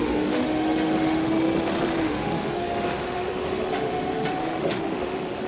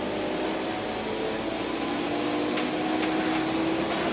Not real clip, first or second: first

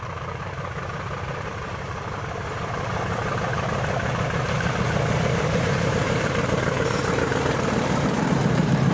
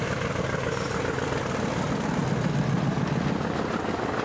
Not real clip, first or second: first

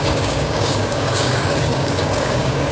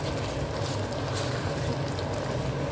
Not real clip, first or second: first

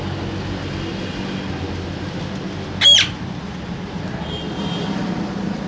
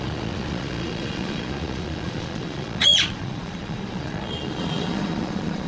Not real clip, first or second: second